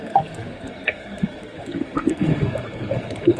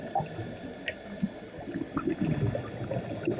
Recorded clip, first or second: second